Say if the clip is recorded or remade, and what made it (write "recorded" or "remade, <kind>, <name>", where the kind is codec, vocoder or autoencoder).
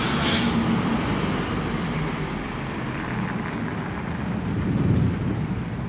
recorded